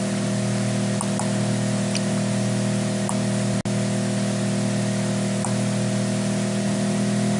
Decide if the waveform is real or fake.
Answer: real